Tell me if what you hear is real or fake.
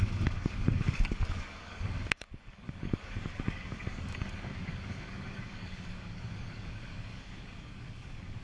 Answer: fake